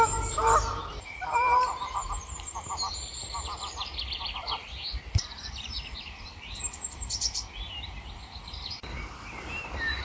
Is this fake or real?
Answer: fake